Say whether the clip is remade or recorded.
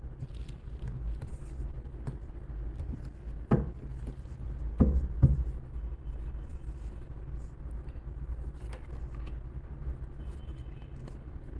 recorded